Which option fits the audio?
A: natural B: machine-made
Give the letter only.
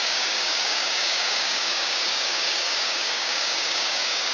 B